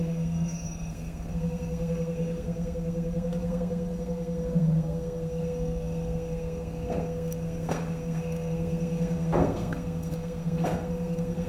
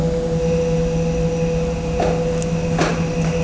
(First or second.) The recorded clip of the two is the second